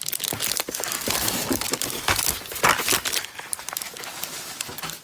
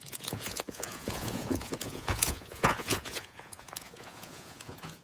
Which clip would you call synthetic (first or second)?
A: second